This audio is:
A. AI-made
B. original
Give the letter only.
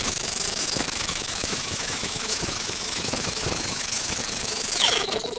A